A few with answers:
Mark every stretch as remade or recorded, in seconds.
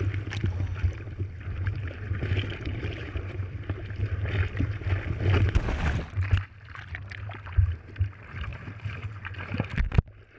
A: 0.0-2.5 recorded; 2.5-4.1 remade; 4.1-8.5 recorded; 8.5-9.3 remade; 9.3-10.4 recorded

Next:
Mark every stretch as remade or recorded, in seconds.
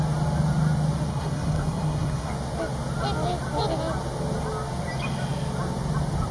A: 0.0-1.1 recorded; 1.1-2.3 remade; 2.3-6.3 recorded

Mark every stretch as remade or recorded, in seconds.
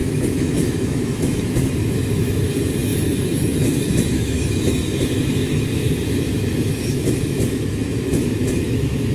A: 0.0-9.1 remade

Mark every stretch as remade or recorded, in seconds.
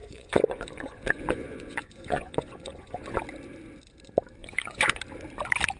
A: 0.0-3.2 remade; 3.2-4.4 recorded; 4.4-5.0 remade; 5.0-5.8 recorded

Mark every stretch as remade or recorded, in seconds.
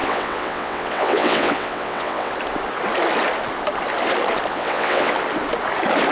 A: 0.0-2.3 remade; 2.3-4.5 recorded; 4.5-5.1 remade; 5.1-6.1 recorded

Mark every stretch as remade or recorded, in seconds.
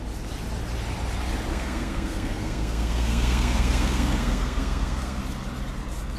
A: 0.0-1.5 recorded; 1.5-5.2 remade; 5.2-6.2 recorded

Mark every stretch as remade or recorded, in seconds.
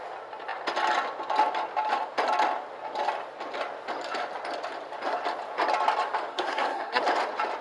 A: 0.0-6.3 recorded; 6.3-7.0 remade; 7.0-7.6 recorded